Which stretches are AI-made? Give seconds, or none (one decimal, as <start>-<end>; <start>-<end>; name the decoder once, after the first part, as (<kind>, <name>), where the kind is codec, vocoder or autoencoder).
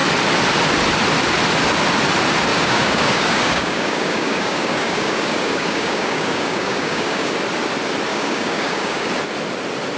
2.5-7.3 (codec, DAC); 8.1-9.1